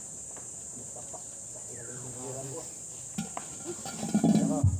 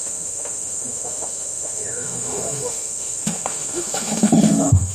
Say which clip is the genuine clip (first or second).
first